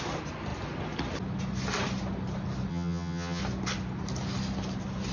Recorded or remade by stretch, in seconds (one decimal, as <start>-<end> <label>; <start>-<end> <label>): 0.0-2.7 recorded; 2.7-3.4 remade; 3.4-5.1 recorded

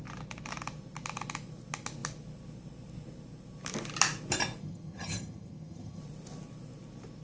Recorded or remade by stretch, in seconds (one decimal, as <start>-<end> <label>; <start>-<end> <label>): 0.0-4.6 recorded; 4.6-6.0 remade; 6.0-7.2 recorded

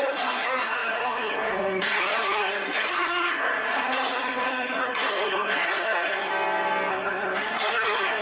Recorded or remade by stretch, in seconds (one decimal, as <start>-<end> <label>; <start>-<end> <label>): 0.0-6.3 remade; 6.3-6.9 recorded; 6.9-8.2 remade

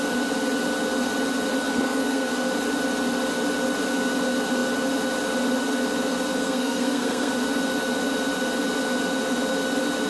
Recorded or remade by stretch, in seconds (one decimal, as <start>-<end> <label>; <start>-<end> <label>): 0.0-1.7 recorded; 1.7-2.3 remade; 2.3-6.4 recorded; 6.4-7.3 remade; 7.3-10.1 recorded

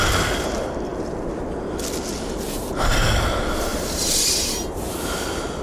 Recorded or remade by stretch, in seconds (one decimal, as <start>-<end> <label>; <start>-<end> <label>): 0.0-3.7 recorded; 3.7-4.9 remade; 4.9-5.6 recorded

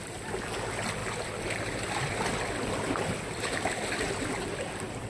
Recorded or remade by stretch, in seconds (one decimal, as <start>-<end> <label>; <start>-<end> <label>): 0.0-5.1 recorded

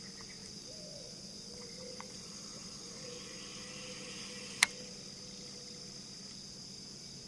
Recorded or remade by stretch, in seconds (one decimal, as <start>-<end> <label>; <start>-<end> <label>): 0.0-0.4 recorded; 0.4-3.4 remade; 3.4-7.3 recorded

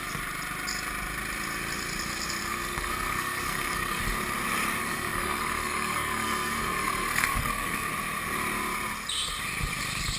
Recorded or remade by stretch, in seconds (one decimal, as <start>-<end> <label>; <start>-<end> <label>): 0.0-2.4 recorded; 2.4-4.0 remade; 4.0-4.8 recorded; 4.8-7.9 remade; 7.9-10.2 recorded